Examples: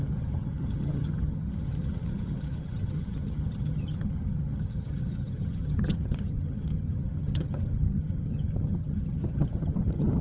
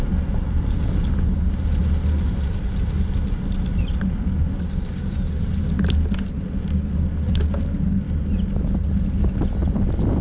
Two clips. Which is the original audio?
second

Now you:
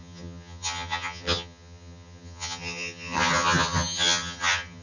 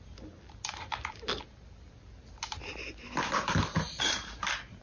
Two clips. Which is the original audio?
second